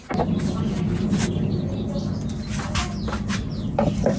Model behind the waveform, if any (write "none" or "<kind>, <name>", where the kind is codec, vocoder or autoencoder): none